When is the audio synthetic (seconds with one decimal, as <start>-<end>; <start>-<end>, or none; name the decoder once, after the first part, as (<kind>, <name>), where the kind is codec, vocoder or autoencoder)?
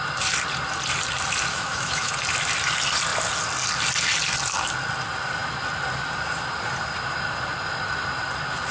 1.5-2.1 (autoencoder, DAC-VAE)